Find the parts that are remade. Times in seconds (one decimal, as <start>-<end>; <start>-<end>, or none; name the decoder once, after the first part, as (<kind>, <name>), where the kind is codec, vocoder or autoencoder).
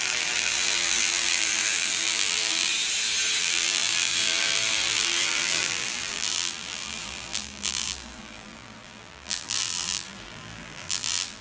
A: 0.0-2.7 (vocoder, BigVGAN v2); 3.4-11.4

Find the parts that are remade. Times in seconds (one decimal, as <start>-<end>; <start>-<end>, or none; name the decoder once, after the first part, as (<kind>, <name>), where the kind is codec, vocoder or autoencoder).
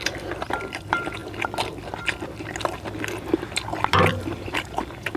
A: 0.0-1.2 (vocoder, BigVGAN v2); 4.1-5.2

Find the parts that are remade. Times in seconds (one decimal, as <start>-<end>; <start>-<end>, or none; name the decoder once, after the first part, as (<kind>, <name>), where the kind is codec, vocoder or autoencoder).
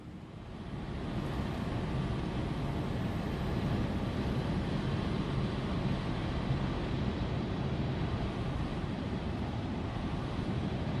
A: 8.7-11.0 (vocoder, BigVGAN v2)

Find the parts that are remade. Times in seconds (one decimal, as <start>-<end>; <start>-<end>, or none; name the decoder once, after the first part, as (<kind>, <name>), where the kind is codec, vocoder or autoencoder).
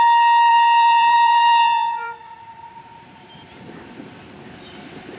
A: 0.5-3.6 (vocoder, BigVGAN v2)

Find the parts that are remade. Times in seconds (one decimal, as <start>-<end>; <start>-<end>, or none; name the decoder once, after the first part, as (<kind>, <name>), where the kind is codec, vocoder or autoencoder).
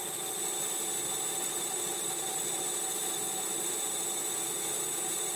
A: 1.3-2.4 (vocoder, BigVGAN v2)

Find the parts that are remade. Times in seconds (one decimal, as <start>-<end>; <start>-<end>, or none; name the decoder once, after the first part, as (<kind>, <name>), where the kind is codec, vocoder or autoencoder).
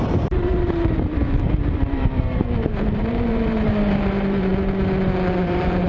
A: 0.0-4.5 (vocoder, BigVGAN v2); 5.3-5.9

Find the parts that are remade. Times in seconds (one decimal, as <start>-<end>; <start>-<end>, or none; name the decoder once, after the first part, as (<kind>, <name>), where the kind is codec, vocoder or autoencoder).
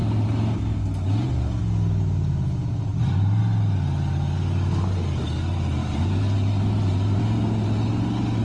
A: 2.9-3.4 (vocoder, BigVGAN v2); 5.8-7.2